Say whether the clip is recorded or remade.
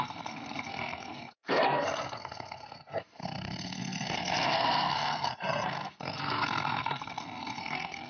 remade